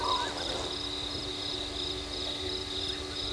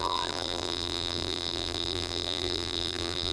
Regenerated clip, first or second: second